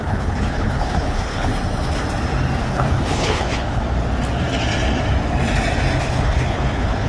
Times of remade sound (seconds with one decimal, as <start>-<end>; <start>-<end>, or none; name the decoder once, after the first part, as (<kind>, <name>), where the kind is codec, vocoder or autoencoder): 0.0-1.5 (codec, HILCodec); 2.6-3.8; 6.0-7.1